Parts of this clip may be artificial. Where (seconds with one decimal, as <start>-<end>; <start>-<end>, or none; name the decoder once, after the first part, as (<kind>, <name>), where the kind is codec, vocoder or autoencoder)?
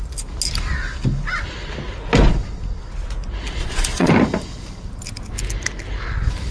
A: 3.6-4.1 (vocoder, Vocos)